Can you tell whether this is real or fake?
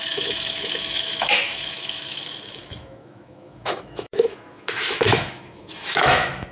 fake